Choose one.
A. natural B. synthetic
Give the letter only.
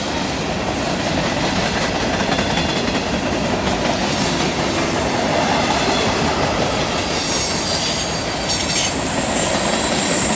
A